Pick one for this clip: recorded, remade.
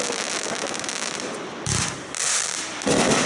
recorded